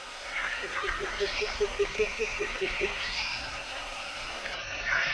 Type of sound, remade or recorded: remade